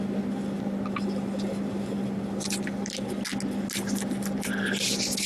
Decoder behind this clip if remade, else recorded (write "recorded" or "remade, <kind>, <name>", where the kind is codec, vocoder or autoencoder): recorded